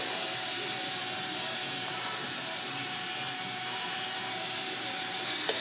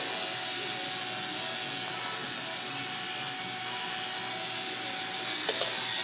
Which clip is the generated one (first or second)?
first